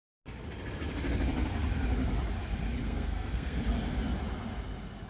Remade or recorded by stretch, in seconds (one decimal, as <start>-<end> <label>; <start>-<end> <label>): 0.0-2.8 recorded; 2.8-3.6 remade; 3.6-5.1 recorded